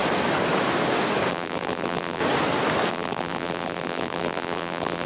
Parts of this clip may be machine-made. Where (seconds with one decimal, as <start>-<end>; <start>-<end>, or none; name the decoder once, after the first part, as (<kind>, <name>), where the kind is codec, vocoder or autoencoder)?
1.3-2.2 (vocoder, BigVGAN v2); 2.9-5.1